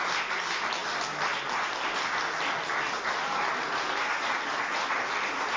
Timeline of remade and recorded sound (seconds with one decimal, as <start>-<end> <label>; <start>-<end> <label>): 0.0-5.6 recorded